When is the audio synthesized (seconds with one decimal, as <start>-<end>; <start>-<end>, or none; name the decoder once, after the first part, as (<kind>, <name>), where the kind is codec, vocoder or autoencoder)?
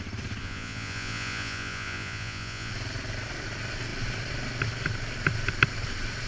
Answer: 0.4-2.7 (vocoder, Vocos)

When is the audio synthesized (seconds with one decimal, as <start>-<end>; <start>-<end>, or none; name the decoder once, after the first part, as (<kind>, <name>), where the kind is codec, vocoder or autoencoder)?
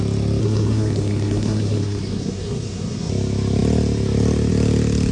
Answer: 0.4-3.1 (codec, SNAC)